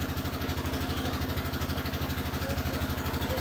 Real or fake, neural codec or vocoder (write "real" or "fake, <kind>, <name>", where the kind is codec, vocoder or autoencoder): fake, codec, DAC